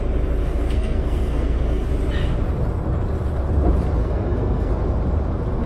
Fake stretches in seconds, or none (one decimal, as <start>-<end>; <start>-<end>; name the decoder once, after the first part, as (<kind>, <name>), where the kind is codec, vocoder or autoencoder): 0.4-1.9 (codec, SNAC); 4.0-4.7